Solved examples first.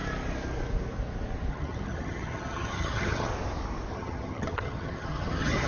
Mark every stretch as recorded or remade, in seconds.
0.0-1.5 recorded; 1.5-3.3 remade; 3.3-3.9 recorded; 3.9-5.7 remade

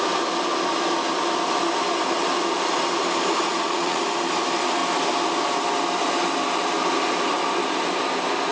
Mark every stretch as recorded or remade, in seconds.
0.0-3.3 recorded; 3.3-4.0 remade; 4.0-8.5 recorded